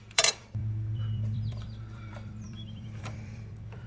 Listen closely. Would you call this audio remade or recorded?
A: remade